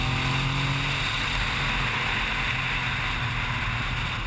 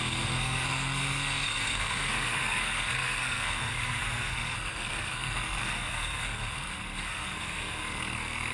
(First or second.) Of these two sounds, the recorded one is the first